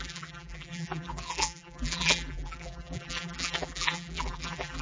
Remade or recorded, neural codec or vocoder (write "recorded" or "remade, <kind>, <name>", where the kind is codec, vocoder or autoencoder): remade, vocoder, BigVGAN v2